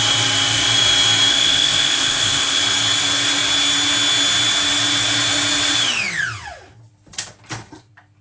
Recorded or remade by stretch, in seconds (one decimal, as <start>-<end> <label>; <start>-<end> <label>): 0.0-1.3 recorded; 1.3-2.6 remade; 2.6-8.2 recorded